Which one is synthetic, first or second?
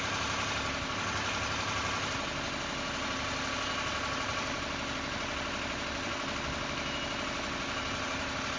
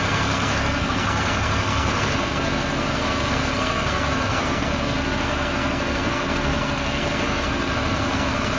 second